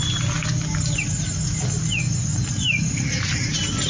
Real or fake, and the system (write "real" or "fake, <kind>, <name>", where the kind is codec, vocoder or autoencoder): real